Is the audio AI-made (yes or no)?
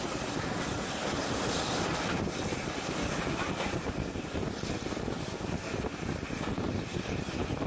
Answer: no